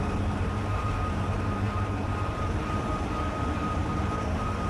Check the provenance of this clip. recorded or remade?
remade